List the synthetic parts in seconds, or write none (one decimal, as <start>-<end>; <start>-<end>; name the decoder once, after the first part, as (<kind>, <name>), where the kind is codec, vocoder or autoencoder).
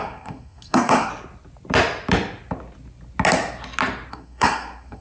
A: 0.0-1.1 (codec, SNAC); 4.1-5.0